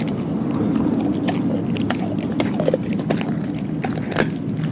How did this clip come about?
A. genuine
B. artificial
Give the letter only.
A